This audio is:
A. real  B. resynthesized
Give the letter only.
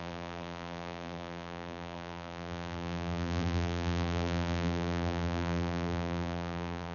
B